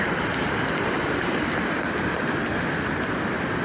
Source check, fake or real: real